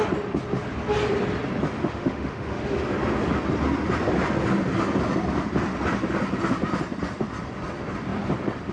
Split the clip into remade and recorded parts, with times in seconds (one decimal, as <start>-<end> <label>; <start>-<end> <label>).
0.0-1.8 recorded; 1.8-2.6 remade; 2.6-8.7 recorded